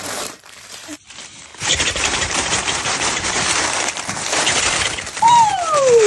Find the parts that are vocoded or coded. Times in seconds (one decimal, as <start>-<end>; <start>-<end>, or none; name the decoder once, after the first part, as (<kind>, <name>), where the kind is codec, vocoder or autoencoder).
0.0-6.1 (vocoder, BigVGAN v2)